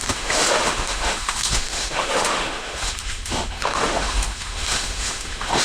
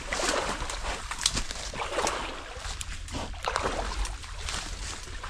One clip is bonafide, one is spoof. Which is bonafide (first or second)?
second